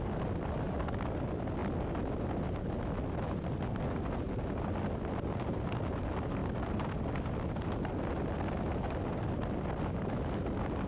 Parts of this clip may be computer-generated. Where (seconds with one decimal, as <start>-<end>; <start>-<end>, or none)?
none